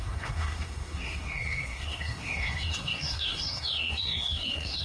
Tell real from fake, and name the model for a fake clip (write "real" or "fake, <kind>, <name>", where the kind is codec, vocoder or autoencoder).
fake, codec, SNAC